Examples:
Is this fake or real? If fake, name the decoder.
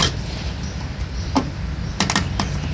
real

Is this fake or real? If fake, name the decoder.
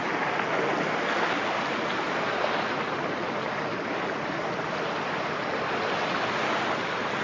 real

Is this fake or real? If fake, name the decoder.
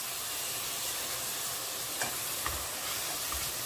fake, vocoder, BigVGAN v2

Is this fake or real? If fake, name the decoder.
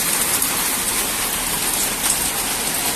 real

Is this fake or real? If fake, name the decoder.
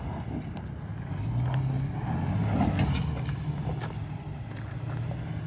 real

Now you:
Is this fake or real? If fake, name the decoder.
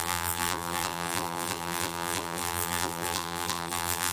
fake, vocoder, BigVGAN v2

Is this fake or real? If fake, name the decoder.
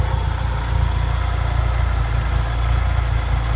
real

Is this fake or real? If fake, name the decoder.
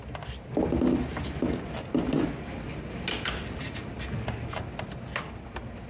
real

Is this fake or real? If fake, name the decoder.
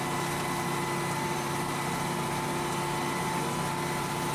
real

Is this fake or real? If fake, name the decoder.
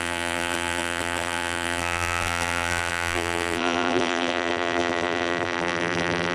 fake, vocoder, BigVGAN v2